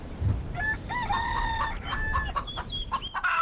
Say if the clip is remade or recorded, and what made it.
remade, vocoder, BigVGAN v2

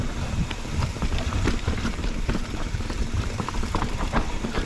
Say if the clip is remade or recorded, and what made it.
remade, vocoder, BigVGAN v2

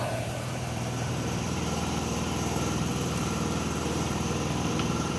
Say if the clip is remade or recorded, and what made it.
remade, vocoder, BigVGAN v2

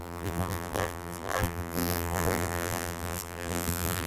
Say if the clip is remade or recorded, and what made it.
remade, vocoder, BigVGAN v2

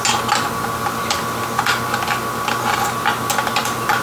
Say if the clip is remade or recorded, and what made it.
recorded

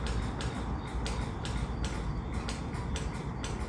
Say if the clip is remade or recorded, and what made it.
recorded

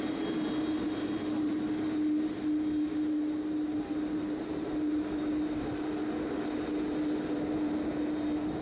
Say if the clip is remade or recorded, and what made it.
recorded